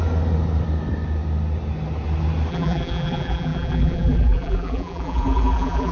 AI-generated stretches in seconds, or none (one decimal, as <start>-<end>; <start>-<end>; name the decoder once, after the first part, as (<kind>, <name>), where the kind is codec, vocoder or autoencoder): 2.5-5.9 (vocoder, BigVGAN v2)